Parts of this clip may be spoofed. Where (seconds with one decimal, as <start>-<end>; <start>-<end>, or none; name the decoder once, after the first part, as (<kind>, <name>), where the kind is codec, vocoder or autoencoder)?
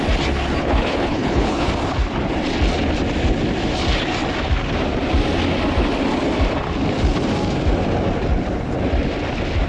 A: 0.6-1.7 (codec, HILCodec)